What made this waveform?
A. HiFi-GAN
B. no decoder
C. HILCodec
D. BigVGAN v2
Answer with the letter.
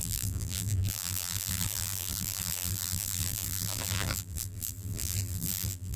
D